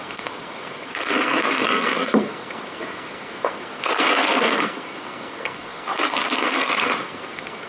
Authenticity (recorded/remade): remade